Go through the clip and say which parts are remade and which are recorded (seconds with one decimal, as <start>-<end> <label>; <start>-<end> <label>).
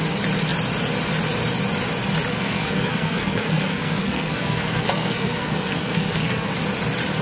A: 0.0-2.3 recorded; 2.3-6.5 remade; 6.5-7.2 recorded